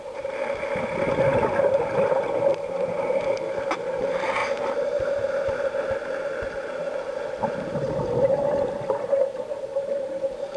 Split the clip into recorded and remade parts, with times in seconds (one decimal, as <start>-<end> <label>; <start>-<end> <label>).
0.0-2.5 recorded; 2.5-3.2 remade; 3.2-9.7 recorded; 9.7-10.2 remade; 10.2-10.6 recorded